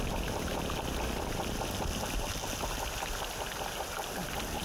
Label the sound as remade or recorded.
recorded